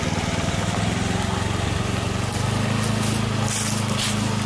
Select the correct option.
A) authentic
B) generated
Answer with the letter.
A